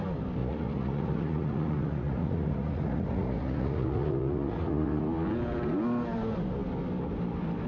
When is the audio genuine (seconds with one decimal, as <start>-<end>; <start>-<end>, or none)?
0.0-0.4; 5.0-7.7